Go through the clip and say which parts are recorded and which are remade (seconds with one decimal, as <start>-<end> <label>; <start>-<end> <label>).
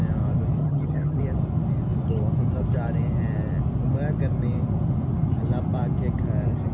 0.0-0.6 recorded; 0.6-1.2 remade; 1.2-6.7 recorded